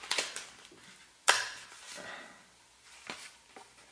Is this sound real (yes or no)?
yes